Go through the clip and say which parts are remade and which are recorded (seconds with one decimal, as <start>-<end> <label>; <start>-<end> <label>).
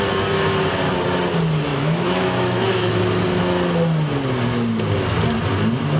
0.0-1.7 recorded; 1.7-3.0 remade; 3.0-6.0 recorded